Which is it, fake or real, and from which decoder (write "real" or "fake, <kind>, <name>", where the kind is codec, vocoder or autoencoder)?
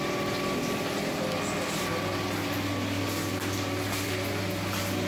real